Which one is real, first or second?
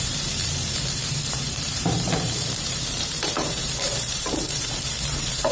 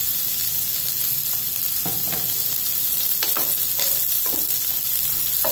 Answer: second